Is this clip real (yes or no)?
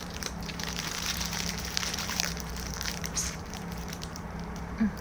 no